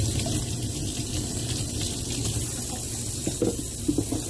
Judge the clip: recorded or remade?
recorded